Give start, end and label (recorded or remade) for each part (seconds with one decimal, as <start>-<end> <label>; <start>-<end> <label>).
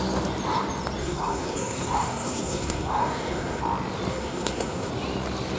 0.0-1.0 recorded; 1.0-3.6 remade; 3.6-4.1 recorded; 4.1-4.9 remade; 4.9-5.6 recorded